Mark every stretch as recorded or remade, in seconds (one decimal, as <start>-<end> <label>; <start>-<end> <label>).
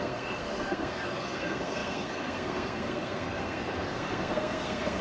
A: 0.0-5.0 remade